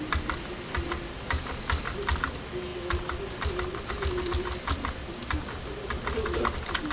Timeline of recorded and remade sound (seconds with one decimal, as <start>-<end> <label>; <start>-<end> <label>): 0.0-6.9 recorded